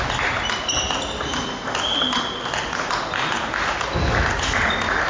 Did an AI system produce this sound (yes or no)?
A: no